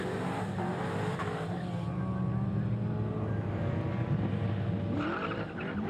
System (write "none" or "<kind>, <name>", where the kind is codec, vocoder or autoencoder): none